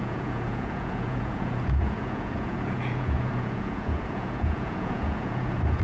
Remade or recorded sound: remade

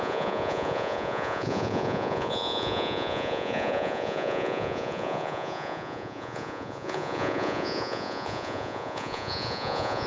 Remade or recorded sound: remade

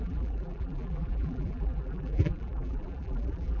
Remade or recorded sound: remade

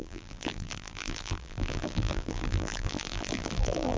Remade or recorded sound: remade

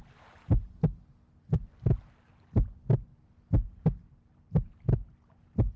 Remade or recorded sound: recorded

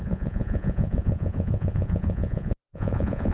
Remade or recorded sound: remade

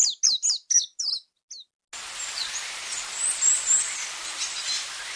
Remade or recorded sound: recorded